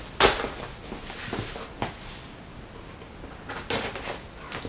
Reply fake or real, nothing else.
real